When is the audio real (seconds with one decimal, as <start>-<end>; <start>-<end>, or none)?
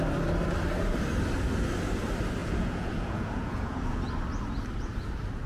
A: 0.0-2.4; 4.0-5.5